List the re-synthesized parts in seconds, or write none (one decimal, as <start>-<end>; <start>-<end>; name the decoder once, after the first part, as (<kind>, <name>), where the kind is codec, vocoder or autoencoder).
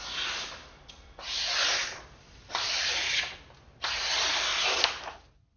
1.8-3.4 (vocoder, BigVGAN v2); 4.5-5.6